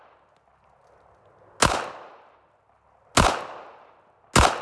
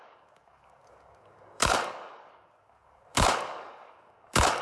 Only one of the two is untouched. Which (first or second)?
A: first